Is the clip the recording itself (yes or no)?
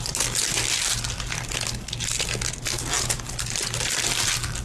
yes